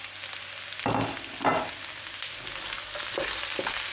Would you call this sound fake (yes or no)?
no